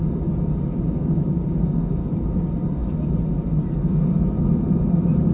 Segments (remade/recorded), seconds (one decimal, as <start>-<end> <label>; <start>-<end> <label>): 0.0-0.7 recorded; 0.7-2.3 remade; 2.3-3.9 recorded; 3.9-4.5 remade; 4.5-5.3 recorded